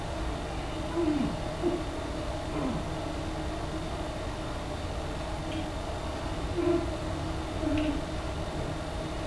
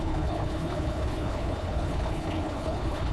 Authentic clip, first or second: first